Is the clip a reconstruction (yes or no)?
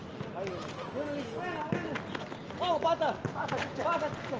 no